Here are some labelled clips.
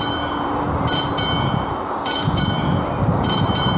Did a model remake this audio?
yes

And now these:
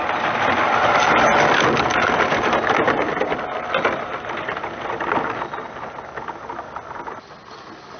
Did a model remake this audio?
no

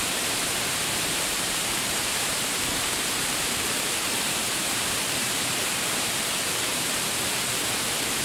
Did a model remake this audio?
yes